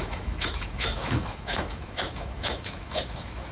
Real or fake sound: fake